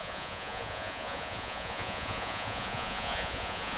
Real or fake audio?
fake